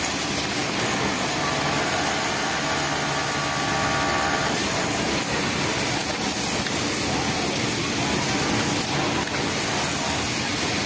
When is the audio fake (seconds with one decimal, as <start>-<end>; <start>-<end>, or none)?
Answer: none